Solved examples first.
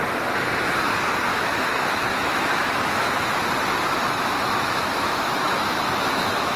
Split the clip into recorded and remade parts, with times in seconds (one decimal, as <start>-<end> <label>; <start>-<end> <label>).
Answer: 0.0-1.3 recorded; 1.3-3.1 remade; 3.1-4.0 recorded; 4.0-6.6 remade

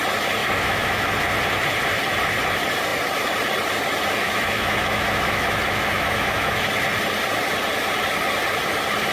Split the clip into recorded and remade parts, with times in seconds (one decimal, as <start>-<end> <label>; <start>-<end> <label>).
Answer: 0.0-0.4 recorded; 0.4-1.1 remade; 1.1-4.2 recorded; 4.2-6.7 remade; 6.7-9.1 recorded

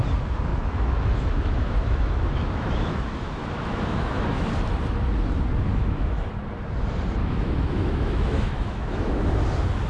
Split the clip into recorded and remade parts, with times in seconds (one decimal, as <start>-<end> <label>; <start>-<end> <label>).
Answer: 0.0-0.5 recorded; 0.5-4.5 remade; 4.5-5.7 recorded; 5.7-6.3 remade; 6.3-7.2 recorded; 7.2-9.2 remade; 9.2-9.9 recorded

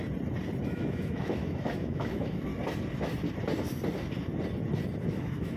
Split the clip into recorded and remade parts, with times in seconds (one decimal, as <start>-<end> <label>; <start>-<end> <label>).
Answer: 0.0-0.6 recorded; 0.6-2.5 remade; 2.5-5.0 recorded; 5.0-5.6 remade

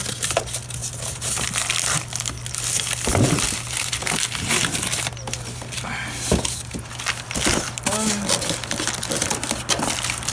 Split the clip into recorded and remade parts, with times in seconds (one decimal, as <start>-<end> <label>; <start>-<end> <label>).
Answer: 0.0-10.3 recorded

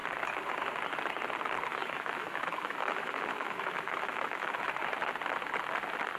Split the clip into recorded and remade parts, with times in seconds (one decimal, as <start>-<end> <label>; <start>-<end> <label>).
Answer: 0.0-1.7 recorded; 1.7-4.6 remade; 4.6-6.2 recorded

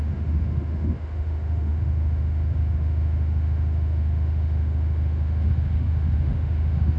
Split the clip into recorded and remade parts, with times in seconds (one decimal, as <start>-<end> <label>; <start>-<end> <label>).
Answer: 0.0-7.0 remade

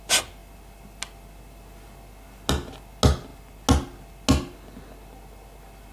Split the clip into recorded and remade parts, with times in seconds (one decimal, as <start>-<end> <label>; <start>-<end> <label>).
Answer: 0.0-5.9 recorded